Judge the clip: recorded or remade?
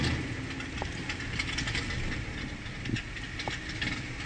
recorded